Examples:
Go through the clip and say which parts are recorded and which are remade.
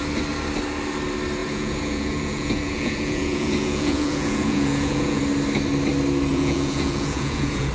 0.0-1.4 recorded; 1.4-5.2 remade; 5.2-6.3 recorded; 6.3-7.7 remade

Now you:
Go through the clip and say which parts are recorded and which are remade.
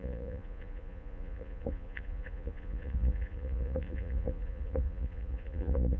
0.0-6.0 remade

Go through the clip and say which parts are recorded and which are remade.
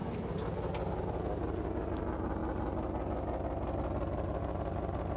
0.0-5.2 recorded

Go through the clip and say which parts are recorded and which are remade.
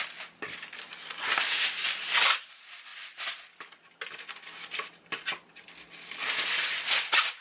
0.0-7.4 recorded